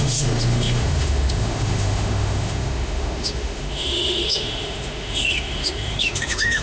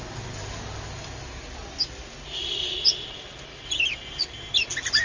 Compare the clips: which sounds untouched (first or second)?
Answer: second